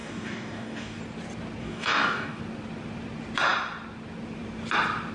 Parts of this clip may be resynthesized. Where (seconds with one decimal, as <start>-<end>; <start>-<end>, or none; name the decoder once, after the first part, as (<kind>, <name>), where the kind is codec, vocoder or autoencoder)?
0.0-1.0 (codec, DAC); 1.6-2.4